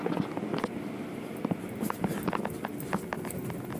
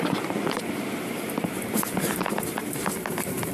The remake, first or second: second